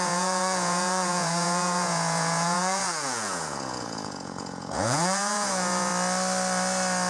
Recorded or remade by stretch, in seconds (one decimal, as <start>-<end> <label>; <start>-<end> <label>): 0.0-5.9 remade; 5.9-7.1 recorded